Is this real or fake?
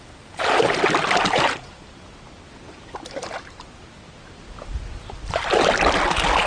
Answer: real